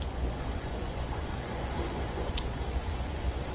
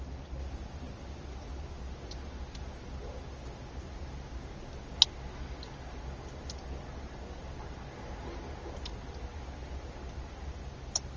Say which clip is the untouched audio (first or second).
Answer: second